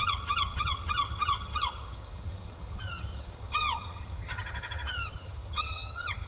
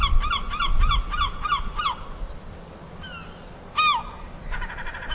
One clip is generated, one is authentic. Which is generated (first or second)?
first